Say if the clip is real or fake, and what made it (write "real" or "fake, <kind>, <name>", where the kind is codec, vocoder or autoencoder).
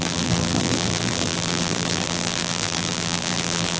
fake, vocoder, BigVGAN v2